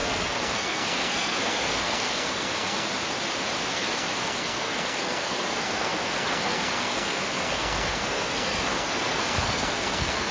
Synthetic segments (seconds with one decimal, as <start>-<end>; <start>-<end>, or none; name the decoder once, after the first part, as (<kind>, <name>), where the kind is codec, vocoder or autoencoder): 0.0-2.9 (codec, SNAC); 3.7-10.3